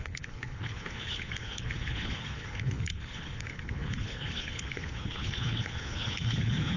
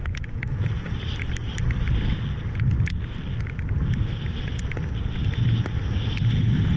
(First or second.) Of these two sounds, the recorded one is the second